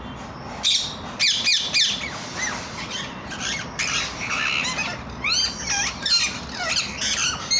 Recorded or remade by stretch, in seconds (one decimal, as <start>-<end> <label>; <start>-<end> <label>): 0.0-7.6 recorded